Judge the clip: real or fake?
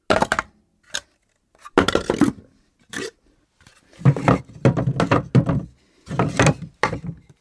real